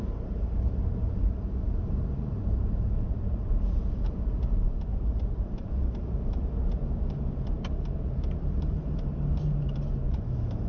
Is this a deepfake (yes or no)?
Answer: yes